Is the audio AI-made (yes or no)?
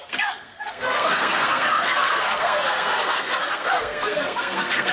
yes